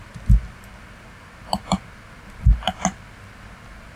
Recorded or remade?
recorded